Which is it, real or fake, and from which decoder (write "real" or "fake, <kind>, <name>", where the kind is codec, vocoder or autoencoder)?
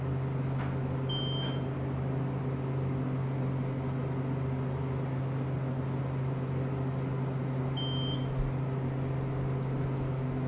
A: real